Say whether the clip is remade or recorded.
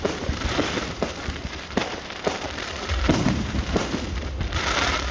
remade